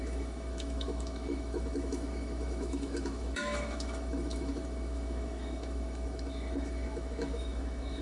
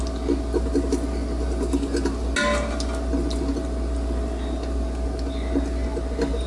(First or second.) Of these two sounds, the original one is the second